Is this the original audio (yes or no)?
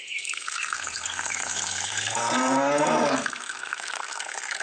no